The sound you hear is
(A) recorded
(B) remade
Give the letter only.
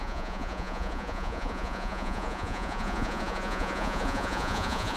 B